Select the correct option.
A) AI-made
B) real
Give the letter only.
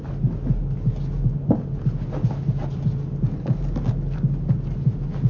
B